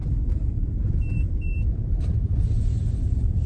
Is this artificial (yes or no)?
yes